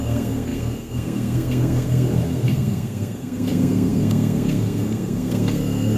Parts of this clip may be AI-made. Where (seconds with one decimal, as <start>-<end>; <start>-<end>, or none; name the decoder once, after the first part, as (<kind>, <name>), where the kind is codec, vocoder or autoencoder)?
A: 0.0-6.0 (codec, SNAC)

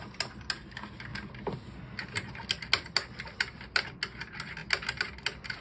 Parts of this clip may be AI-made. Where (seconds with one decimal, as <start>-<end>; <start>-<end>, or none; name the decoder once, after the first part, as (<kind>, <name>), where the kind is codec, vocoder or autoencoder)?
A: none

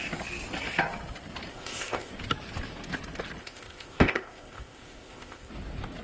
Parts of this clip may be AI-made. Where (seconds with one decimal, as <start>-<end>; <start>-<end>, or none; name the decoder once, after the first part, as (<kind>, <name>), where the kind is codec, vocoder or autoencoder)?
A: 1.5-2.1 (codec, ZipCodec); 3.4-5.5

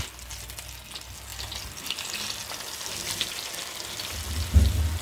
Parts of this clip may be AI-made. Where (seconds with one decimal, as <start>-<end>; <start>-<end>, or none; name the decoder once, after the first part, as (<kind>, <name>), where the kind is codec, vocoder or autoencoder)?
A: none

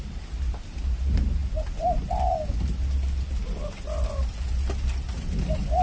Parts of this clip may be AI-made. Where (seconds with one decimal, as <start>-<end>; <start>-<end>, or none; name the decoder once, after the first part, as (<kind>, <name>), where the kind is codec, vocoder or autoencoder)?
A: none

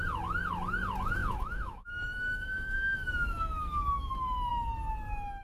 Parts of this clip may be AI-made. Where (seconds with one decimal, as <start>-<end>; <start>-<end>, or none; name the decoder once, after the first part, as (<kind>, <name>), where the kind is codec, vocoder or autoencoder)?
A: 1.2-4.1 (autoencoder, DAC-VAE)

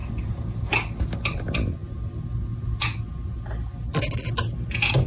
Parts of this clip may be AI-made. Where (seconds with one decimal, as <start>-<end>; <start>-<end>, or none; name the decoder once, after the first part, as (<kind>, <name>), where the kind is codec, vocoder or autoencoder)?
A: 0.0-1.2 (vocoder, BigVGAN v2)

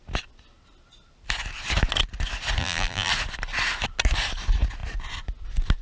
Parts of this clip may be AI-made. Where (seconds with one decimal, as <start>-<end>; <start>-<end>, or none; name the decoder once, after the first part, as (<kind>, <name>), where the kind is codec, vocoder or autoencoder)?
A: 2.6-3.1 (vocoder, BigVGAN v2)